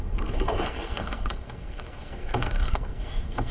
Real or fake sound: fake